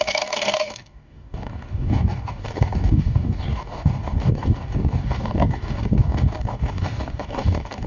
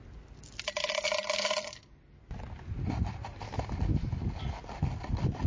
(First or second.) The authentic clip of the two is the second